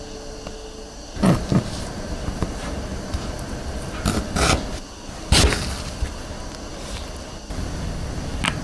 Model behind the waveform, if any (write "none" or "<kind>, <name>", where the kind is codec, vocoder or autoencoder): none